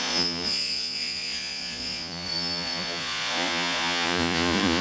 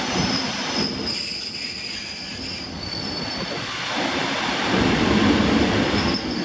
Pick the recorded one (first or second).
second